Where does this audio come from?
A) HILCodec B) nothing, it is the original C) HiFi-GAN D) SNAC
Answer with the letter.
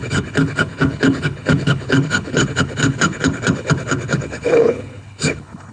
A